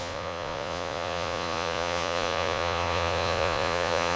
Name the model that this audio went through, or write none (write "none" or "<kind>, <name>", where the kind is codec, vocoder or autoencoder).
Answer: vocoder, Vocos